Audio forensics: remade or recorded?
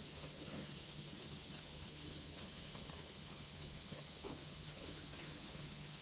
remade